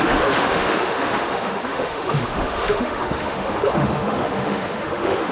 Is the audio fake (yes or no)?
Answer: yes